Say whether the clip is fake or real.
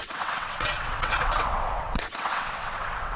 fake